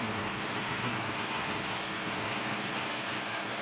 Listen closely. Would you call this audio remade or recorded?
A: remade